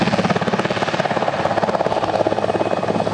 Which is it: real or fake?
real